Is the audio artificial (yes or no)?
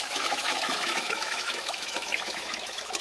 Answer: yes